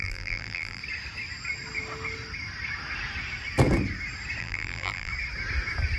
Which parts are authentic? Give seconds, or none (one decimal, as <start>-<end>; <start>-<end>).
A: 0.8-4.4; 5.1-6.0